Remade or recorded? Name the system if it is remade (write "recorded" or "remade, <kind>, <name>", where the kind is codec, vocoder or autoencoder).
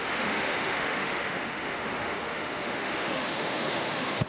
remade, autoencoder, DAC-VAE